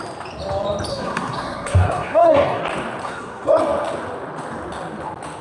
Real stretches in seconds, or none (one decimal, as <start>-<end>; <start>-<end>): 0.0-0.9; 2.6-3.0; 3.6-5.4